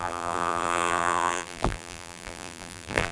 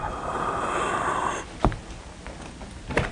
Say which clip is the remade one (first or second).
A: first